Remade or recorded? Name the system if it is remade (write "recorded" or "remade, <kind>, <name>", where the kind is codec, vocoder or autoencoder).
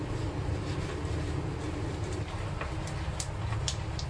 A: recorded